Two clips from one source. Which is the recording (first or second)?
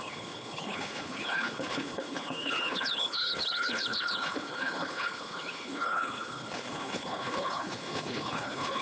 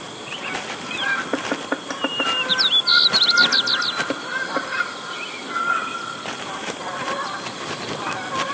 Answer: second